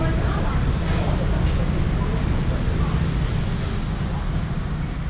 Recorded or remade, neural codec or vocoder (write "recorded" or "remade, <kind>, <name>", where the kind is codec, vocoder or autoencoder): recorded